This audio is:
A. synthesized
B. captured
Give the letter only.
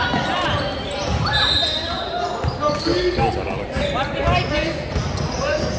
B